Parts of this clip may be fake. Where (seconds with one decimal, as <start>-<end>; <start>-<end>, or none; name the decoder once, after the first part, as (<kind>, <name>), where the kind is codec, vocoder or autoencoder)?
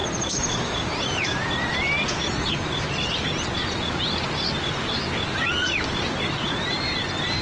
0.0-1.9 (vocoder, BigVGAN v2)